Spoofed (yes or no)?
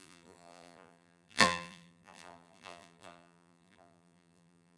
yes